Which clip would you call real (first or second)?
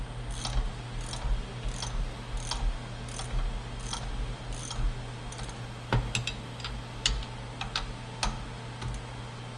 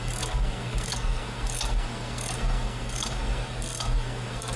first